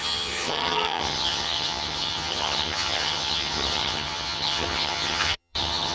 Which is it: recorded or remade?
remade